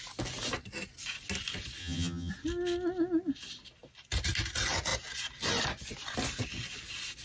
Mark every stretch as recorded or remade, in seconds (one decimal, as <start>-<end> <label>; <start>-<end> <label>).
0.0-1.8 recorded; 1.8-2.3 remade; 2.3-7.2 recorded